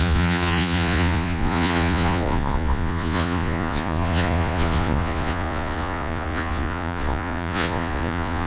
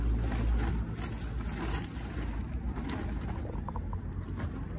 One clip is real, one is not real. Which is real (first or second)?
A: second